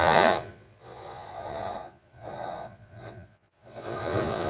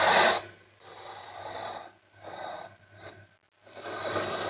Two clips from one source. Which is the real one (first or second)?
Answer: second